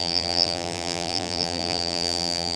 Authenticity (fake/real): fake